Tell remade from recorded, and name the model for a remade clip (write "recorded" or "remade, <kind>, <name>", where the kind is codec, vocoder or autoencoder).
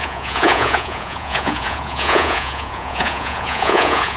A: remade, vocoder, Vocos